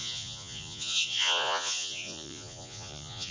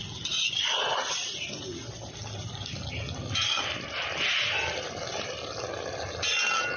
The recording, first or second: second